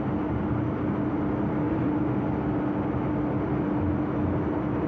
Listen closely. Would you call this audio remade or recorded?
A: recorded